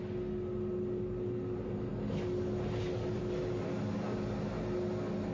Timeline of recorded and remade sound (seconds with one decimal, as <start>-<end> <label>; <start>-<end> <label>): 0.0-5.3 recorded